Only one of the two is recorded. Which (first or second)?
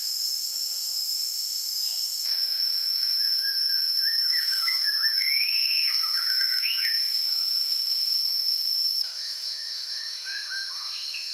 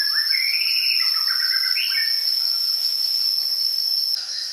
second